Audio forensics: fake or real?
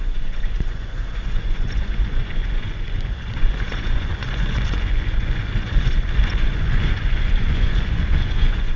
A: fake